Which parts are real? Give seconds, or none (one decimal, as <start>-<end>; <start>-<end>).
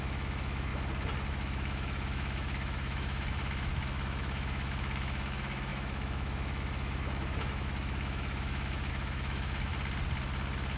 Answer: 0.7-1.3; 9.7-10.8